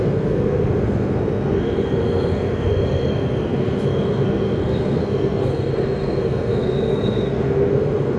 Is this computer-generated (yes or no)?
yes